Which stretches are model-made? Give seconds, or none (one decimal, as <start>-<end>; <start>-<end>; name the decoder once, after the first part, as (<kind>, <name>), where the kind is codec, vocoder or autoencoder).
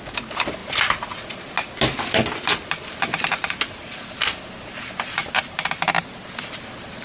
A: none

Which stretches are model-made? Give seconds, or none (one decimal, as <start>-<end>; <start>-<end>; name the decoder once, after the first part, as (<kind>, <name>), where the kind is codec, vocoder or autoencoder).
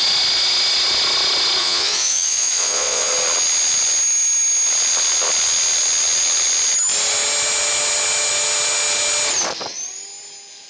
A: 1.6-3.1 (vocoder, Vocos)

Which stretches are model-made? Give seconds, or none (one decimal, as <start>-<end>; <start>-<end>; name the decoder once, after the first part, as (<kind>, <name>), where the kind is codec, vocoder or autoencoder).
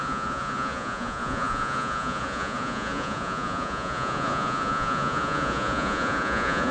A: 0.0-6.7 (vocoder, Vocos)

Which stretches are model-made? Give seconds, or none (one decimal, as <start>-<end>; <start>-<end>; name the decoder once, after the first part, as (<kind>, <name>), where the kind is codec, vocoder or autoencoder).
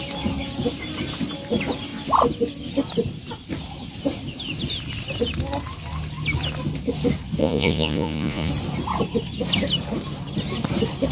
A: 7.4-8.5 (vocoder, Vocos)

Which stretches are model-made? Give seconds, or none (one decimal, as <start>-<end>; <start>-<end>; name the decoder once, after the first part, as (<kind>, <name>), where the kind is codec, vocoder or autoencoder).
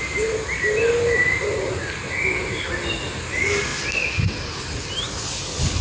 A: none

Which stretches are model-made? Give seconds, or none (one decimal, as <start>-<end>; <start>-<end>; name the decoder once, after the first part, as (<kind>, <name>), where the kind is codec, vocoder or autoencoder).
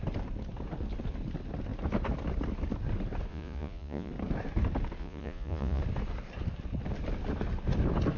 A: 3.3-4.1 (vocoder, Vocos); 5.0-5.8